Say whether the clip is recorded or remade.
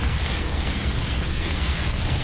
remade